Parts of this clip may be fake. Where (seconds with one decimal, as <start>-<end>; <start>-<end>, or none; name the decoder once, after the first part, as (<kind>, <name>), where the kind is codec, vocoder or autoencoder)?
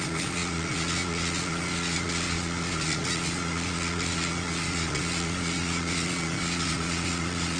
0.0-7.6 (vocoder, Vocos)